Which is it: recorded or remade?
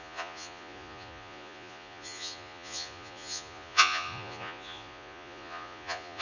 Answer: remade